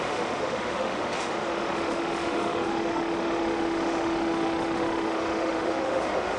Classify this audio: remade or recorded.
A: remade